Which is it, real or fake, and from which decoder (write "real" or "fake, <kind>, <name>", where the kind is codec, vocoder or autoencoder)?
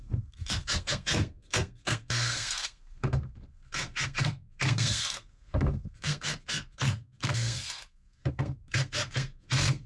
fake, codec, SNAC